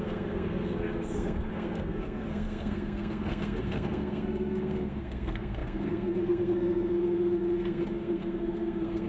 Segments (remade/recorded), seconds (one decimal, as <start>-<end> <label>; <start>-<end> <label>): 0.0-9.1 remade